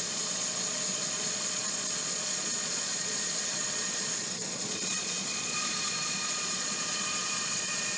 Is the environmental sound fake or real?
fake